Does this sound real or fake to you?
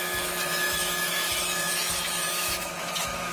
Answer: fake